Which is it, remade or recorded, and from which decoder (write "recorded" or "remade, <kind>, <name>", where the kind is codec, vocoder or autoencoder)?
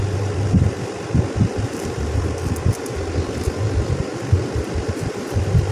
recorded